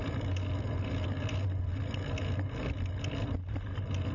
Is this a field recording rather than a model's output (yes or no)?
yes